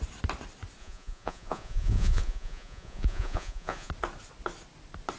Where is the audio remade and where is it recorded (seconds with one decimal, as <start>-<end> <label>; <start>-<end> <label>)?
0.0-0.8 recorded; 0.8-3.9 remade; 3.9-5.2 recorded